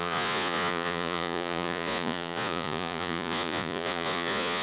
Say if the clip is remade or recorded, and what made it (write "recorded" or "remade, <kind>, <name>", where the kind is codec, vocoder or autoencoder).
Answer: remade, vocoder, Vocos